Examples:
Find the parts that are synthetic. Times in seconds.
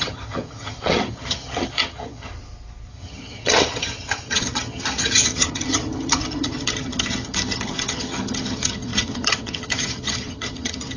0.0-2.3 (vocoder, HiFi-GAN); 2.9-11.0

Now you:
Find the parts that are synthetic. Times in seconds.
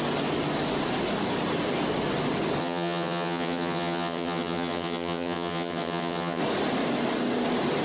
2.6-6.4 (vocoder, HiFi-GAN)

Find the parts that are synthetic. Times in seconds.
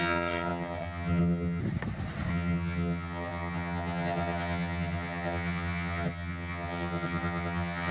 0.0-1.6 (vocoder, HiFi-GAN); 2.3-7.9